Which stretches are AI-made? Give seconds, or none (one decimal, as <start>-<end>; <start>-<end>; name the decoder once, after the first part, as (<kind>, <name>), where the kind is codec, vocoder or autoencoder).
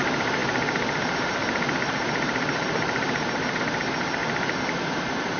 none